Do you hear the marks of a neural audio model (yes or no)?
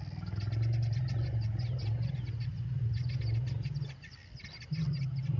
no